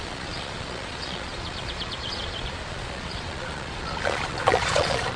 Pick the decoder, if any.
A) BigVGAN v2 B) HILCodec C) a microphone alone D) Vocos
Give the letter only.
D